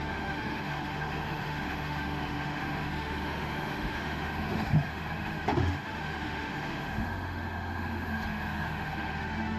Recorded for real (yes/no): no